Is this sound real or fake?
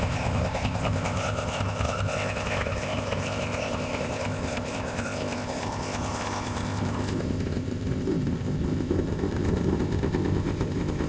fake